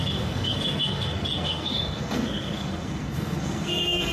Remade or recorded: remade